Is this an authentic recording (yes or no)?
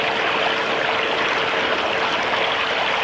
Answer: yes